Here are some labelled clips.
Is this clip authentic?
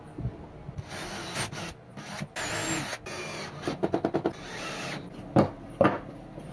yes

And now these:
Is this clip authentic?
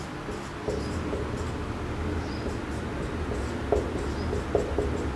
yes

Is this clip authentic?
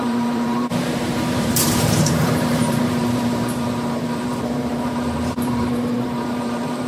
no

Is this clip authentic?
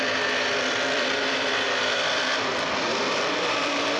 no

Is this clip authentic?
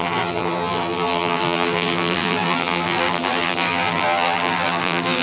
no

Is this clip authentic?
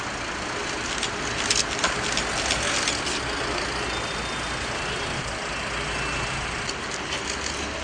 yes